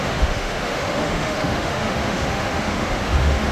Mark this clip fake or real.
fake